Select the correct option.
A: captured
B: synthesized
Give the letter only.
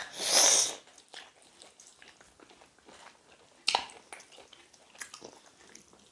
A